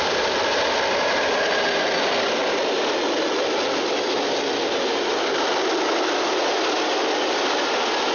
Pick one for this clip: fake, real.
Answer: real